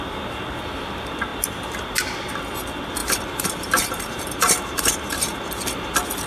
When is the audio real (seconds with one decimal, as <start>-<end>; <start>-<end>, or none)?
0.0-3.0; 5.5-6.3